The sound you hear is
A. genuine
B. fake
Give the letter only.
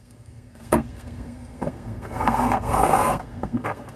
B